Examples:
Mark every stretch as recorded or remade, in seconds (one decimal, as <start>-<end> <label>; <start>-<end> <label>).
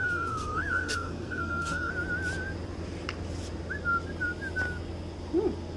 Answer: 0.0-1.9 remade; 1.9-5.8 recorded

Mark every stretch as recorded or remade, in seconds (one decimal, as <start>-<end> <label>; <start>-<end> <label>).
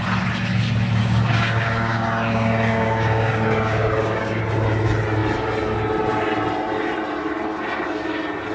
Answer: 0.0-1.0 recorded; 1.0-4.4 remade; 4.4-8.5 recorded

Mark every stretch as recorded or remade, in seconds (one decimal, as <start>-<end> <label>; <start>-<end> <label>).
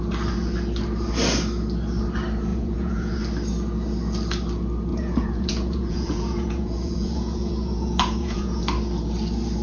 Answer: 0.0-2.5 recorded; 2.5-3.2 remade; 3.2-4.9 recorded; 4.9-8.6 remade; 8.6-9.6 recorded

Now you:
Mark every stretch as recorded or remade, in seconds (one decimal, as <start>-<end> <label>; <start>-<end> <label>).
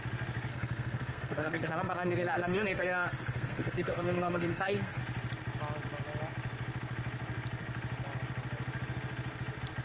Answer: 0.0-0.5 recorded; 0.5-5.0 remade; 5.0-9.8 recorded